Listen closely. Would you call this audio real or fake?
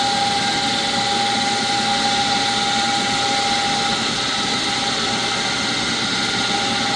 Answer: real